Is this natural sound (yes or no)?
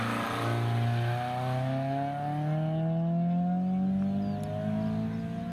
yes